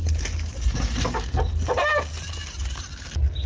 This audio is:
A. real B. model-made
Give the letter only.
A